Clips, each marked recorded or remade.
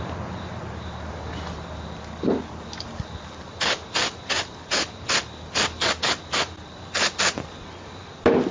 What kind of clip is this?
recorded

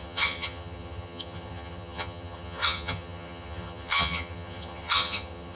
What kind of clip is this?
remade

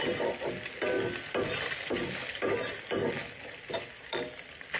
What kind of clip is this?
recorded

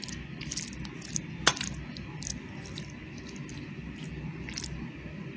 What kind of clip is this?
recorded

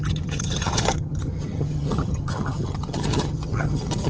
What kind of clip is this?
remade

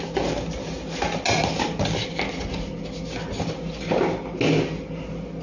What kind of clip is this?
recorded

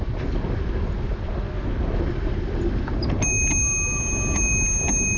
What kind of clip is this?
recorded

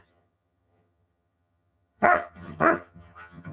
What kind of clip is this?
remade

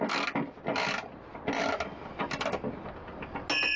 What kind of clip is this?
recorded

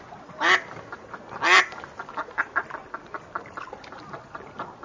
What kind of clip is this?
recorded